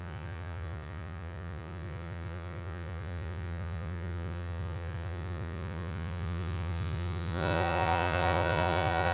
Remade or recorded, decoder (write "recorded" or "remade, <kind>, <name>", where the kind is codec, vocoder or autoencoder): remade, vocoder, Vocos